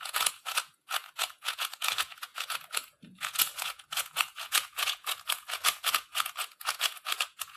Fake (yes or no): yes